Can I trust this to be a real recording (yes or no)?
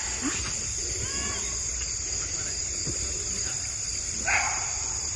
yes